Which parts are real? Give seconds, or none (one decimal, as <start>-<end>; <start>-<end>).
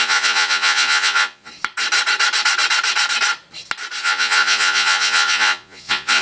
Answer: 1.5-4.0